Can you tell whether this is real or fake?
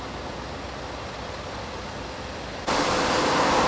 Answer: real